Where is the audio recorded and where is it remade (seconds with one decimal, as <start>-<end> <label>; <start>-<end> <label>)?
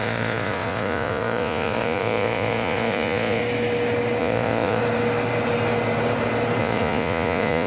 0.0-3.4 remade; 3.4-4.2 recorded; 4.2-4.8 remade; 4.8-6.6 recorded; 6.6-7.7 remade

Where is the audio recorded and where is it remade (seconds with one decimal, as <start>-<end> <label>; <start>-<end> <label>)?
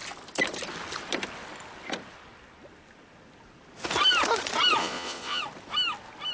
0.0-4.8 recorded; 4.8-5.4 remade; 5.4-6.3 recorded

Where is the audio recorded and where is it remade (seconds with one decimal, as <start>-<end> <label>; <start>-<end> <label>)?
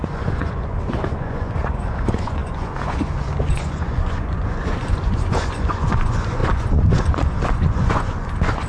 0.0-8.7 remade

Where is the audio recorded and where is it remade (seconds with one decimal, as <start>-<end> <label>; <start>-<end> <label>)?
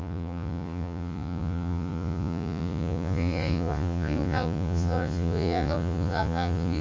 0.0-6.8 remade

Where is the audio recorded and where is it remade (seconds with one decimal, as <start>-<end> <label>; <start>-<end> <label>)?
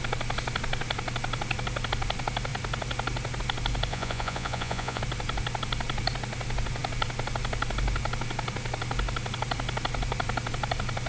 0.0-3.9 recorded; 3.9-5.0 remade; 5.0-11.1 recorded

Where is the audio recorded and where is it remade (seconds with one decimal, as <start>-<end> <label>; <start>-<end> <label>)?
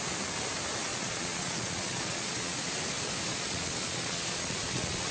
0.0-0.9 recorded; 0.9-2.6 remade; 2.6-3.3 recorded; 3.3-5.1 remade